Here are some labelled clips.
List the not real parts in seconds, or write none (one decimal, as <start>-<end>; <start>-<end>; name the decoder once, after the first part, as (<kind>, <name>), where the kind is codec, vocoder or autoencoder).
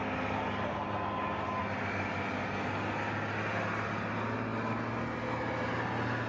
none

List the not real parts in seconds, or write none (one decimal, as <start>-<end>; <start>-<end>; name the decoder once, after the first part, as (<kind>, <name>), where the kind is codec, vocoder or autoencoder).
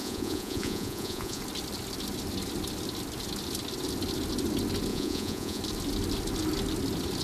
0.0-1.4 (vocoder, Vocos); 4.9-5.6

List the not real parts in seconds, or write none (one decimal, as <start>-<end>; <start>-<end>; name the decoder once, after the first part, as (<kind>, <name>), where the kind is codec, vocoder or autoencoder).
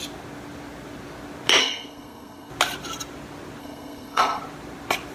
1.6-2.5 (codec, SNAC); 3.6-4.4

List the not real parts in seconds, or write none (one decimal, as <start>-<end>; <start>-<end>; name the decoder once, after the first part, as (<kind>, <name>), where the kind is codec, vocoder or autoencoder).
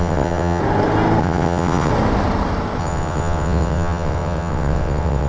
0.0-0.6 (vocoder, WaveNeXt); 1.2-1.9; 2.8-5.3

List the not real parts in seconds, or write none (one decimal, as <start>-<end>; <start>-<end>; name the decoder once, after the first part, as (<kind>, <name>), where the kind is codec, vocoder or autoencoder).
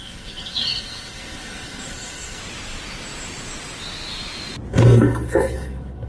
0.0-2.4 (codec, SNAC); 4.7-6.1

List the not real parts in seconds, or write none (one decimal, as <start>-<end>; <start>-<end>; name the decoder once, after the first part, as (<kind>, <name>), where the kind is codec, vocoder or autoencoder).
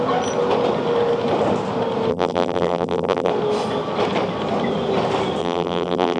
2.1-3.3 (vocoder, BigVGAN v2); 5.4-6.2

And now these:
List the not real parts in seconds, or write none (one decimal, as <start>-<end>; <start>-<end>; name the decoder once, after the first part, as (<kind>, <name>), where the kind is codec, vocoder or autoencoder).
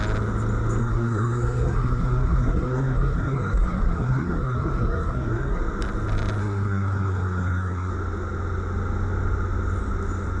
0.8-5.6 (codec, SNAC); 6.4-7.9